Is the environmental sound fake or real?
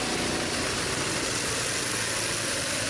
real